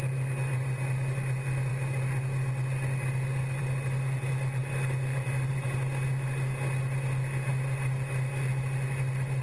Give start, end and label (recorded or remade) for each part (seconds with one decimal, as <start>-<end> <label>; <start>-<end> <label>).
0.0-9.4 recorded